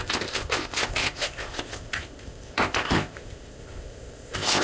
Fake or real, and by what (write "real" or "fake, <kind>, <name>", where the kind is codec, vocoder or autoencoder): fake, codec, ZipCodec